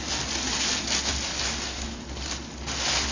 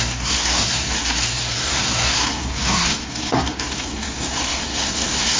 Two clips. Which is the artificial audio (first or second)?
second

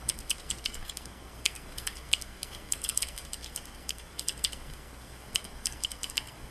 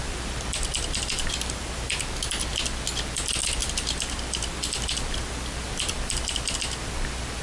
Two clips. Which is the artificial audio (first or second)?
first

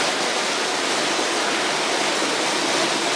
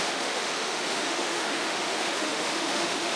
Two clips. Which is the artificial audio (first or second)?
second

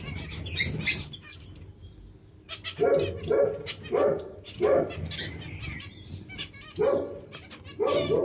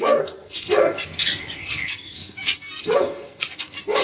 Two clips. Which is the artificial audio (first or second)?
second